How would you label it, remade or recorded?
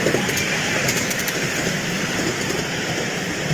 remade